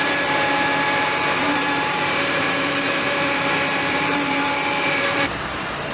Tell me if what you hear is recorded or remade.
remade